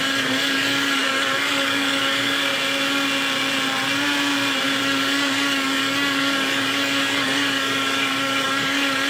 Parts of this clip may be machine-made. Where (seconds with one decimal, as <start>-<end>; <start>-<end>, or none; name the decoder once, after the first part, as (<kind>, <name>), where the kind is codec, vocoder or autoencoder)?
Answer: 0.0-2.5 (codec, DAC); 4.8-9.1